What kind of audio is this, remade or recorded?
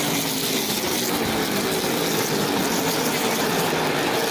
recorded